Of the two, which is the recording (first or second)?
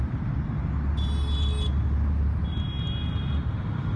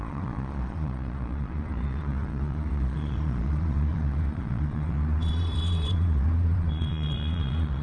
first